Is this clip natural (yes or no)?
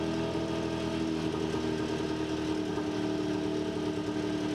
yes